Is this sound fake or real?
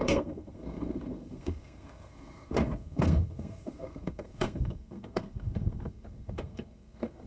fake